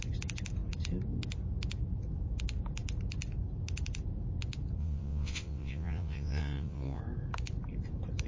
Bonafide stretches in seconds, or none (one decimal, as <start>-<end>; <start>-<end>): 0.0-4.8; 7.0-8.3